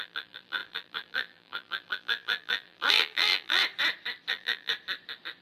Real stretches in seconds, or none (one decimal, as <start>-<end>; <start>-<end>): 3.6-4.3; 4.7-5.4